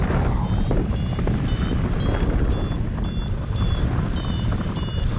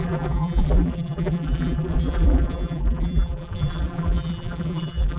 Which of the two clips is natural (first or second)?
first